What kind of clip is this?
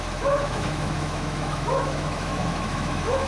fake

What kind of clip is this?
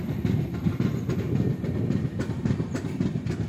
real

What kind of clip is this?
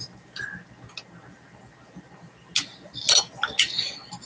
real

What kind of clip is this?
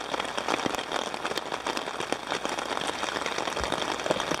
real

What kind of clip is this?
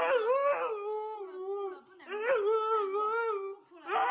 real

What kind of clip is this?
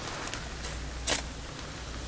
real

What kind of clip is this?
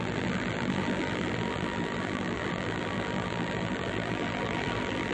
fake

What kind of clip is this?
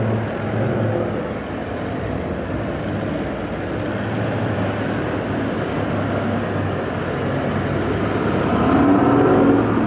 real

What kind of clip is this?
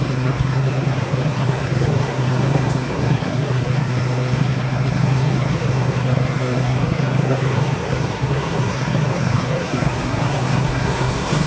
fake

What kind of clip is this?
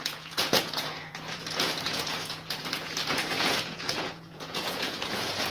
fake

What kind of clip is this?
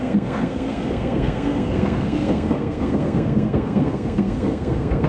fake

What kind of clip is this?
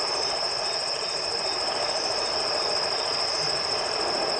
fake